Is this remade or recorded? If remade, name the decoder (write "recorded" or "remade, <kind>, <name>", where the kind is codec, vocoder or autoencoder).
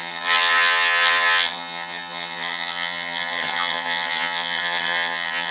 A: remade, vocoder, HiFi-GAN